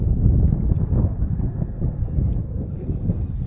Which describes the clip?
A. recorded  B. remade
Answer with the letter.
A